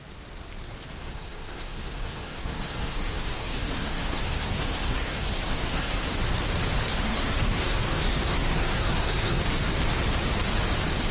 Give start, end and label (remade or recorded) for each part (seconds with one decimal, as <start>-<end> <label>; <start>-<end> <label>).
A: 0.0-1.0 recorded; 1.0-6.1 remade; 6.1-6.9 recorded; 6.9-9.4 remade; 9.4-11.1 recorded

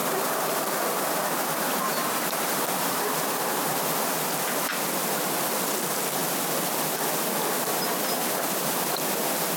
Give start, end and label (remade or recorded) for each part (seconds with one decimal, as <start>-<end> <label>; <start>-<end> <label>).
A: 0.0-4.1 remade; 4.1-9.6 recorded

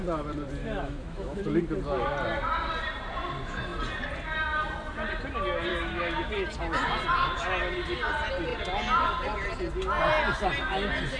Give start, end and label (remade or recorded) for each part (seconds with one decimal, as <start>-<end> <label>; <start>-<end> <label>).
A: 0.0-0.6 recorded; 0.6-1.6 remade; 1.6-5.7 recorded; 5.7-6.3 remade; 6.3-11.2 recorded

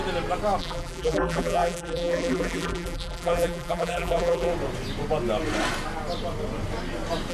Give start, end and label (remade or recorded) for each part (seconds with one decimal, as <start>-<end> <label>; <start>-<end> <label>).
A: 0.0-0.6 recorded; 0.6-4.5 remade; 4.5-7.3 recorded

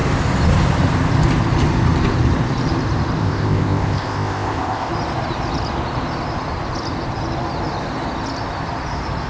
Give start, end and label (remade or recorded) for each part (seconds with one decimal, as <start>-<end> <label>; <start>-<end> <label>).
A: 0.0-3.2 recorded; 3.2-4.9 remade; 4.9-9.3 recorded

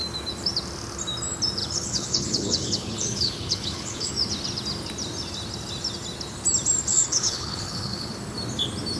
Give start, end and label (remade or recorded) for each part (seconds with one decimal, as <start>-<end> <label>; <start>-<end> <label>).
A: 0.0-1.6 recorded; 1.6-4.1 remade; 4.1-6.9 recorded; 6.9-8.1 remade; 8.1-9.0 recorded

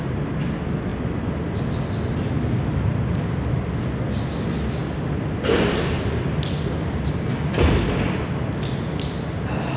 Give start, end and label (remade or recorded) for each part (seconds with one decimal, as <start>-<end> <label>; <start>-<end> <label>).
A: 0.0-9.8 recorded

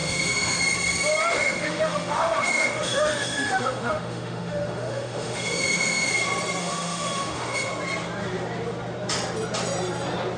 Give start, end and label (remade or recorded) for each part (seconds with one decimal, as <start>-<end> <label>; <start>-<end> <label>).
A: 0.0-0.6 remade; 0.6-1.2 recorded; 1.2-6.1 remade; 6.1-6.6 recorded; 6.6-7.7 remade; 7.7-10.4 recorded